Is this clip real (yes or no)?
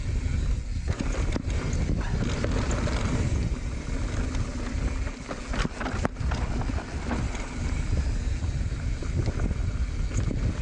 yes